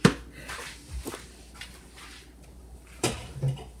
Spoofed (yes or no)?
yes